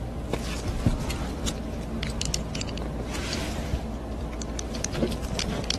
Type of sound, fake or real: real